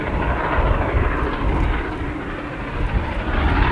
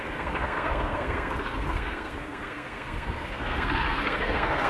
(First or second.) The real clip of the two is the first